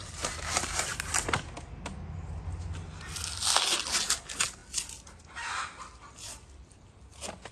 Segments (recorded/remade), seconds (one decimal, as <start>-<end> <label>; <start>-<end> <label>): 0.0-7.5 recorded